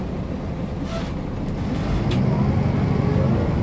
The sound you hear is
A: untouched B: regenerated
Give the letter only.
A